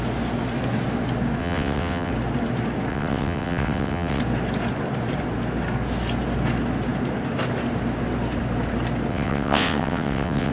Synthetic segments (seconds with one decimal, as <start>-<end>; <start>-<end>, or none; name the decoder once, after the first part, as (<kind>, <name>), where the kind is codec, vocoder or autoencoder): 1.4-2.1 (vocoder, WaveNeXt); 2.9-4.2; 9.1-10.5